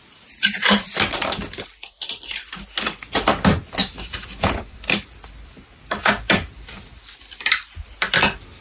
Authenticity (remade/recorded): remade